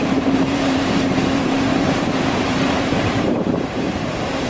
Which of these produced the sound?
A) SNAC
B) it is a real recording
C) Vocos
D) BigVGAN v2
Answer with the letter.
D